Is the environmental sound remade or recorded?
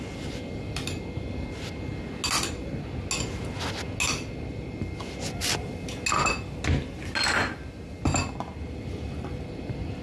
recorded